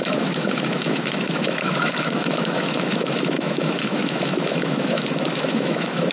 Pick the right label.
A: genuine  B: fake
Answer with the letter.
B